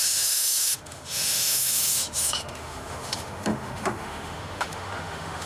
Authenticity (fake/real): fake